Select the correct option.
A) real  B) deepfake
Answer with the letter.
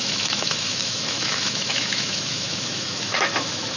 B